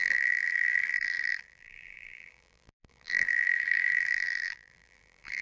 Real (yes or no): no